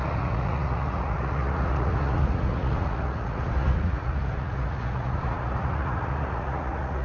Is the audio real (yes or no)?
no